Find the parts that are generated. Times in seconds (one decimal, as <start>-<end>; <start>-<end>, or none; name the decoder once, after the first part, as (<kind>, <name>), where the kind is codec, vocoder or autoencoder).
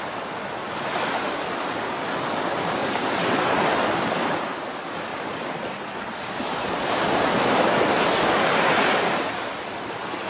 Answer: 2.8-3.6 (vocoder, BigVGAN v2); 5.1-6.9